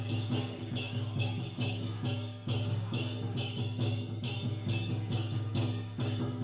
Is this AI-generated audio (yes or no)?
yes